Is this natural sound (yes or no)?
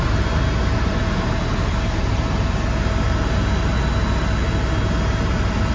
yes